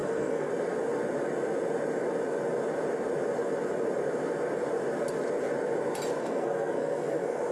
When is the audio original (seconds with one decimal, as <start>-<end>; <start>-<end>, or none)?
0.5-6.2